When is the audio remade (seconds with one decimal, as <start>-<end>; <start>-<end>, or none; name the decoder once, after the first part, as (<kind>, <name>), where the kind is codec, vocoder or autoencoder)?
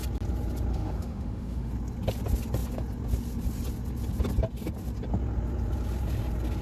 0.7-1.7 (autoencoder, DAC-VAE)